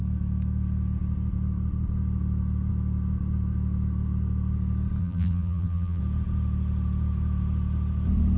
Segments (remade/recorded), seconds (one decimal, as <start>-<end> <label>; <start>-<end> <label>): 0.0-5.0 recorded; 5.0-6.0 remade; 6.0-8.4 recorded